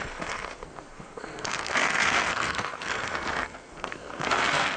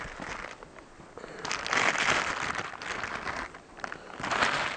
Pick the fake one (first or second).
first